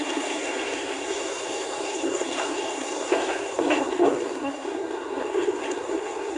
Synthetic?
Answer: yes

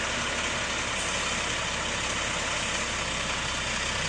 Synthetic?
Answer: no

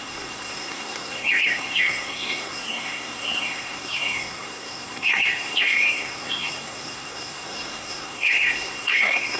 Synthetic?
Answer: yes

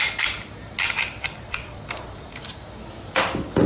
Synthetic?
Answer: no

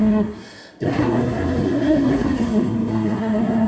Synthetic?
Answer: yes